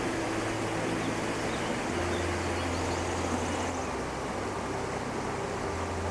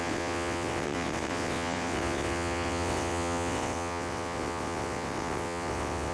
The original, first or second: first